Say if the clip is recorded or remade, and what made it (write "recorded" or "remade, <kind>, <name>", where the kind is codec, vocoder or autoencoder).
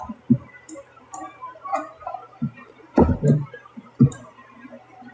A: remade, vocoder, BigVGAN v2